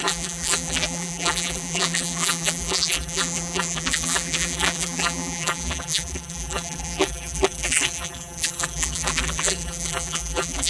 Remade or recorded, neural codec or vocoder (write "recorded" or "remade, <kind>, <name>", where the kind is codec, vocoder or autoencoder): remade, vocoder, BigVGAN v2